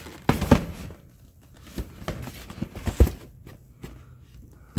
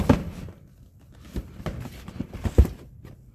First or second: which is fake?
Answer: second